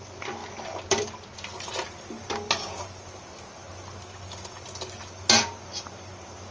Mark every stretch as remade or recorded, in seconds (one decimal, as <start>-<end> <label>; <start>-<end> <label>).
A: 0.0-6.5 recorded